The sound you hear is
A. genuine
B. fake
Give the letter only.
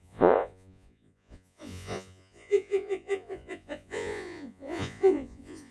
B